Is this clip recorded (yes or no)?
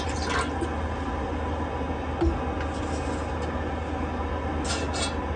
yes